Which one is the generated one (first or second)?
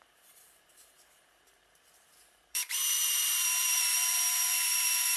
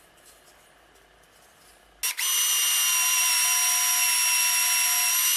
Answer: first